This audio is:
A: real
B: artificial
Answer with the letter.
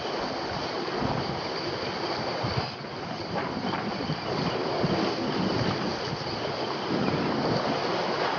A